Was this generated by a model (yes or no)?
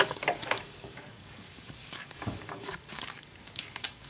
yes